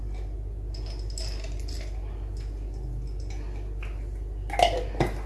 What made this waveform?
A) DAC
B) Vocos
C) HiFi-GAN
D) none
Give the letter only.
D